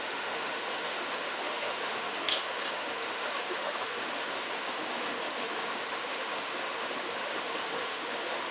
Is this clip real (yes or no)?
no